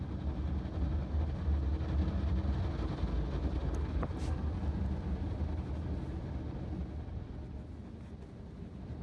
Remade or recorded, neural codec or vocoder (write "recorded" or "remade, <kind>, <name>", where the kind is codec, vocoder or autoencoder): recorded